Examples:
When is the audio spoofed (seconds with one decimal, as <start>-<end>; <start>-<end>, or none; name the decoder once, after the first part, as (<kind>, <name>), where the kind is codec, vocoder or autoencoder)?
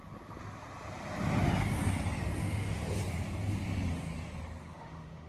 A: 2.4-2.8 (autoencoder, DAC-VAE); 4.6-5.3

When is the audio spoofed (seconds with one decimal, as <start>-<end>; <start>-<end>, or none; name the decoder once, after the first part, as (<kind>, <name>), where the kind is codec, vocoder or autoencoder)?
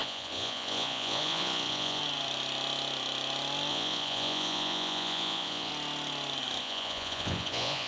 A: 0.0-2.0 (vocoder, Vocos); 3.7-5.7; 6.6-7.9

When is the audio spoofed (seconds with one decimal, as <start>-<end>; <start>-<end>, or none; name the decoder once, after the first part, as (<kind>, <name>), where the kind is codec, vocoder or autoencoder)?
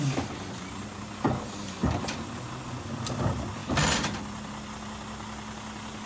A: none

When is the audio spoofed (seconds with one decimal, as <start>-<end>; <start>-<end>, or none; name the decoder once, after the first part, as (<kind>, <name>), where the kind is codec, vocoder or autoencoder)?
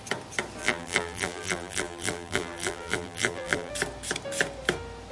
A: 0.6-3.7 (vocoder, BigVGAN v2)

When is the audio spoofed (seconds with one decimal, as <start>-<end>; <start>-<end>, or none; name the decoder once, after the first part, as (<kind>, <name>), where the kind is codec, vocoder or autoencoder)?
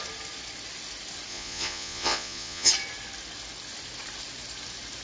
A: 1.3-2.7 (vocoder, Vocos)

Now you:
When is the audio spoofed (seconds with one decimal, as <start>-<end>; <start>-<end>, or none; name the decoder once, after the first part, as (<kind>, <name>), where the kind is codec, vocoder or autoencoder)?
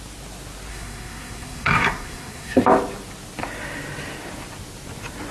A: 0.7-2.6 (codec, SNAC)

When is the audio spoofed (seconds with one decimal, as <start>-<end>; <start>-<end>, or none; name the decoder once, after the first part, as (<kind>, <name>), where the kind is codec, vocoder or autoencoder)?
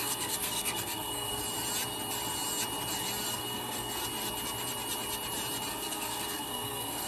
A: 0.0-1.4 (codec, SNAC); 3.3-4.0; 5.7-7.1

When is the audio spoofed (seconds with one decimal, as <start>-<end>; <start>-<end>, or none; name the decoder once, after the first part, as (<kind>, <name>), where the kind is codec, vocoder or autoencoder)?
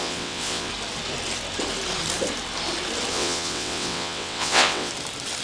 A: 0.0-0.7 (vocoder, WaveNeXt); 3.1-4.9